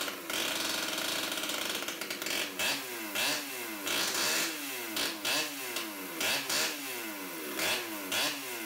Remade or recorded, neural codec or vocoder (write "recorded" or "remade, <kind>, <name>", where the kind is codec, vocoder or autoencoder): recorded